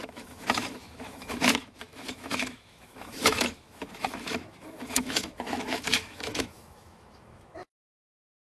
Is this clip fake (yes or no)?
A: yes